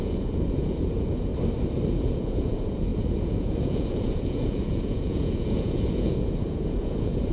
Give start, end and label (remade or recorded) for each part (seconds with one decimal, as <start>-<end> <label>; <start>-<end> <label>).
0.0-1.3 remade; 1.3-1.9 recorded; 1.9-7.3 remade